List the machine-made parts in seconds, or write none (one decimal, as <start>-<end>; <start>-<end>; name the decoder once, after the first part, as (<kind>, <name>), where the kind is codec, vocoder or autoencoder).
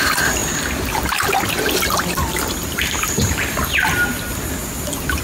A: none